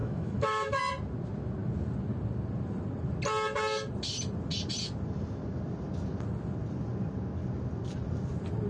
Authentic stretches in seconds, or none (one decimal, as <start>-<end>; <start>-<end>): 0.8-8.7